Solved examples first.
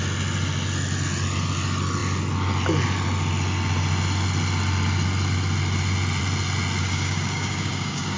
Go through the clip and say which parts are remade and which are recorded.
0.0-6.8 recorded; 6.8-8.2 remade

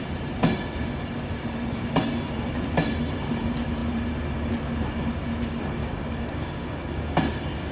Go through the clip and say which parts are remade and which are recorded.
0.0-5.8 recorded; 5.8-7.0 remade; 7.0-7.7 recorded

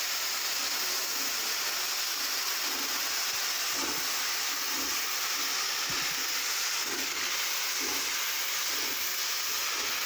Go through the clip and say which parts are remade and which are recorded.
0.0-6.8 recorded; 6.8-7.3 remade; 7.3-10.1 recorded

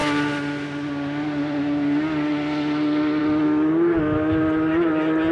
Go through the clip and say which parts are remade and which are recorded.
0.0-5.3 recorded

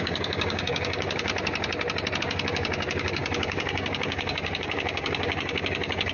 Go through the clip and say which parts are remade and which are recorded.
0.0-1.3 remade; 1.3-2.2 recorded; 2.2-6.1 remade

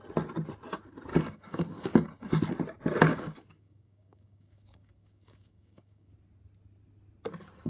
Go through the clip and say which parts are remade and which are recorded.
0.0-1.1 recorded; 1.1-2.4 remade; 2.4-3.1 recorded; 3.1-6.1 remade; 6.1-7.7 recorded

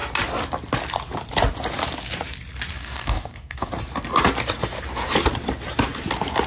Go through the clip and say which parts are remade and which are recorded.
0.0-2.7 recorded; 2.7-3.7 remade; 3.7-6.5 recorded

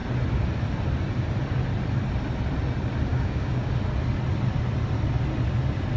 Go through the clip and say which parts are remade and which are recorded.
0.0-3.1 recorded; 3.1-3.7 remade; 3.7-6.0 recorded